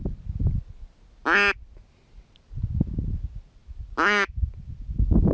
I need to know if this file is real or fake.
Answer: real